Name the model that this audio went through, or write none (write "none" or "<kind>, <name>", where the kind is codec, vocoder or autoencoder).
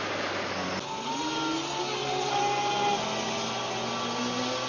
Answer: none